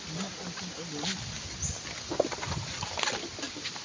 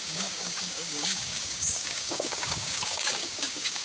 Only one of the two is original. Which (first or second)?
first